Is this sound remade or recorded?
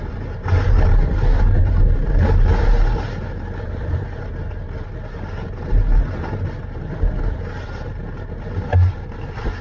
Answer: recorded